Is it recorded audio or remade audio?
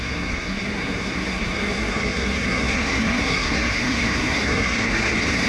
remade